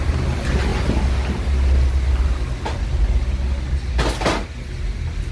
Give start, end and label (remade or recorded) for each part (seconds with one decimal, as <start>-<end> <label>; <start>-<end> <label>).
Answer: 0.0-5.3 recorded